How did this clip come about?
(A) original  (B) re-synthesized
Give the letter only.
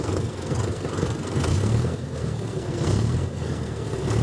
B